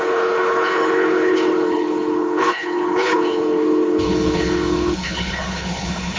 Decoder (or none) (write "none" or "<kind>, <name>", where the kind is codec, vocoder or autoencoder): codec, HILCodec